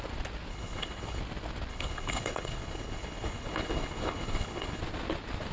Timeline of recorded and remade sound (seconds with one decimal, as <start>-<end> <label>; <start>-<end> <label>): 0.0-0.5 recorded; 0.5-1.2 remade; 1.2-1.7 recorded; 1.7-4.8 remade; 4.8-5.5 recorded